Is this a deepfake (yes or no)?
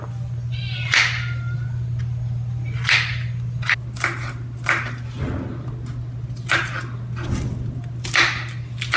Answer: no